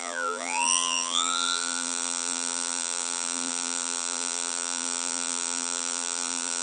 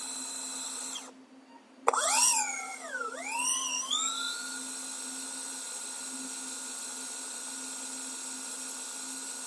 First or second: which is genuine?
second